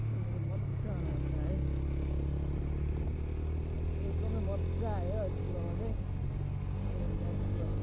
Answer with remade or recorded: recorded